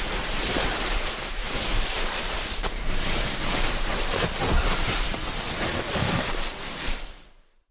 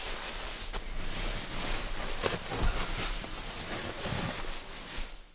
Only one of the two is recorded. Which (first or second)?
second